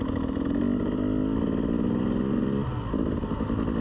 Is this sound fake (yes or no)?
no